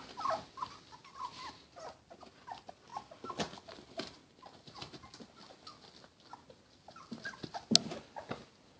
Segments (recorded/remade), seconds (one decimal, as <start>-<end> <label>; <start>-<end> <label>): 0.0-8.8 recorded